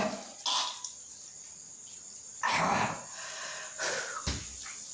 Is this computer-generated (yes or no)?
no